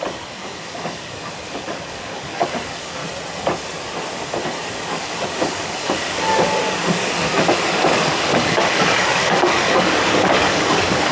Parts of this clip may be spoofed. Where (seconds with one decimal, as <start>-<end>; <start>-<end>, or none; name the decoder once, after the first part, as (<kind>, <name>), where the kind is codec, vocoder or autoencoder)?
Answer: 0.0-3.0 (codec, DAC); 4.7-11.1